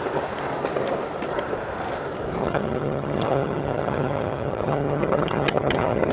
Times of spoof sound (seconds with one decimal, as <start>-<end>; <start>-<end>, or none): 2.4-6.1